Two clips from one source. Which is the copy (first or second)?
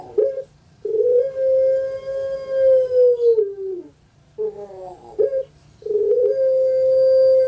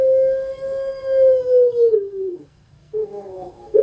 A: second